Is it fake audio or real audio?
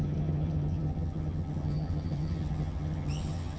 fake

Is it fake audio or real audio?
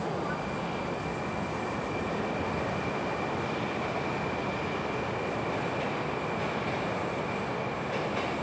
real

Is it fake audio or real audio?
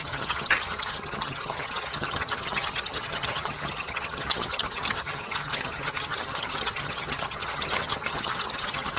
fake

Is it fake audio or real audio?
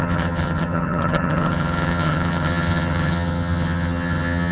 fake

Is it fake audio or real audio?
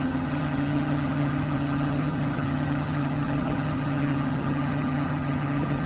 fake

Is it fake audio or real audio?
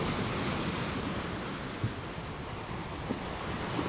real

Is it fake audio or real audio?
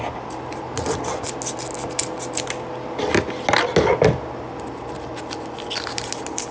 real